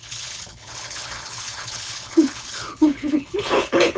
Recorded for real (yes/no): no